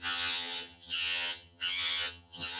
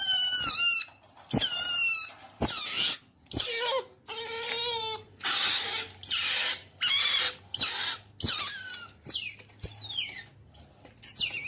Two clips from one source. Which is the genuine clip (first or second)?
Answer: second